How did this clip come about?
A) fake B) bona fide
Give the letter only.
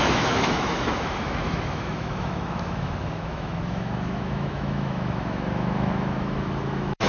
A